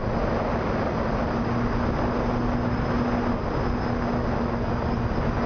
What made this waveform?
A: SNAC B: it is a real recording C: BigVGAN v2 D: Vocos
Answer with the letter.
B